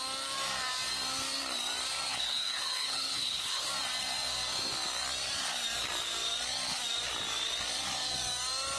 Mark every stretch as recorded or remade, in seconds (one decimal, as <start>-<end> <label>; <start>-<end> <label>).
0.0-2.1 recorded; 2.1-3.7 remade; 3.7-8.8 recorded